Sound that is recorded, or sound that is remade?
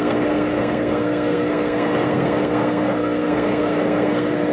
remade